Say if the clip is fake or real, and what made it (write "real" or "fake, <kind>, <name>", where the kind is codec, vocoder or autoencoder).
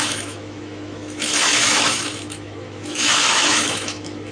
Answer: fake, autoencoder, DAC-VAE